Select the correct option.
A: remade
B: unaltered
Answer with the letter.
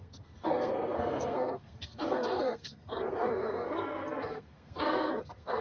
A